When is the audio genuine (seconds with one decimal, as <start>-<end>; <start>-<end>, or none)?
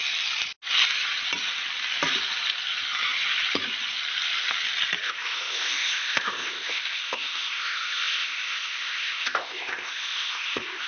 0.0-5.0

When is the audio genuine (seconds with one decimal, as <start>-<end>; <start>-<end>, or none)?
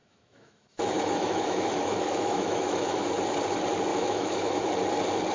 3.1-3.9; 4.7-5.3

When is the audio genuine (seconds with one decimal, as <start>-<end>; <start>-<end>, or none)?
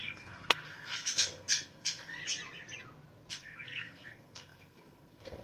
2.2-3.3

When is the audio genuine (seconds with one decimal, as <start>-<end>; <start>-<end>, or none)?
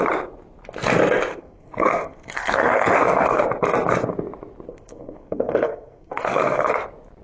0.0-1.3; 3.4-4.7; 6.7-7.2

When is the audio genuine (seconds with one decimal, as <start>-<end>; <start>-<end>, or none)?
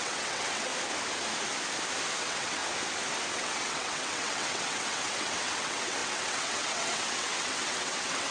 0.7-2.2; 2.6-3.3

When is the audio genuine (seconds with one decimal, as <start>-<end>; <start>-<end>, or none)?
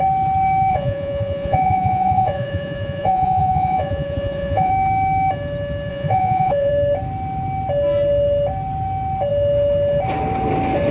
0.0-0.7; 4.7-5.9; 6.7-10.9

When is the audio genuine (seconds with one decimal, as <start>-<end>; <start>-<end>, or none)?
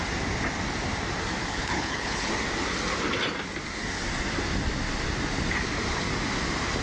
0.0-1.5; 2.3-6.8